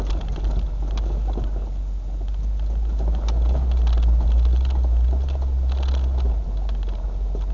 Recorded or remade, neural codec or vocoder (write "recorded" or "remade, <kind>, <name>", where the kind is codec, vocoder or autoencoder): recorded